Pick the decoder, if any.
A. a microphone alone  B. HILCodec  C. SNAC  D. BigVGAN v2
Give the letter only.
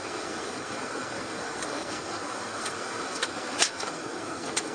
C